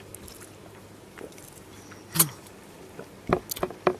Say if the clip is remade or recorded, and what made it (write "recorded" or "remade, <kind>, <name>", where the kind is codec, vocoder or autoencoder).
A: recorded